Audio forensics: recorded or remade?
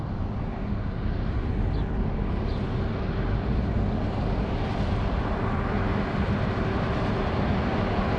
recorded